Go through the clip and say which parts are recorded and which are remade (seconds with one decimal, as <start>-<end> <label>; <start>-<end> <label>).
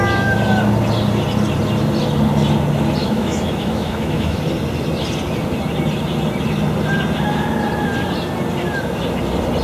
0.0-3.0 recorded; 3.0-4.4 remade; 4.4-9.6 recorded